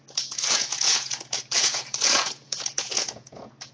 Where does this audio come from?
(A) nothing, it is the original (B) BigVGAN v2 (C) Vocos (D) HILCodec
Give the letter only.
C